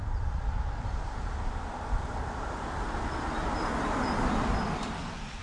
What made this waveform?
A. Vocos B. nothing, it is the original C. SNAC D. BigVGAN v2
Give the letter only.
D